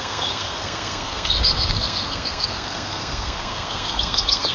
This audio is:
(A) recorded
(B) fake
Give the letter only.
B